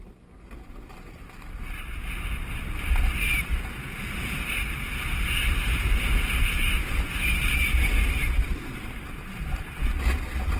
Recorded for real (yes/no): yes